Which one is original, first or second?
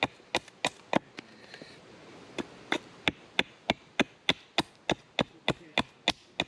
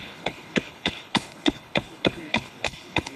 first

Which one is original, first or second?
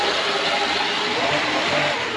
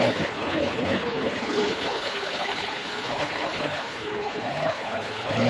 first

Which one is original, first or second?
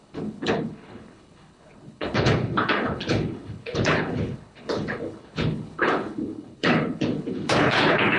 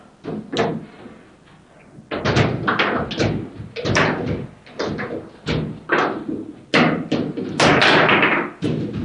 second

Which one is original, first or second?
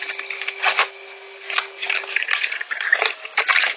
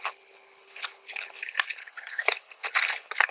first